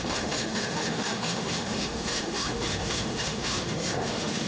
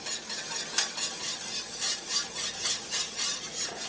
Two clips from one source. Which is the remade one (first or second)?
first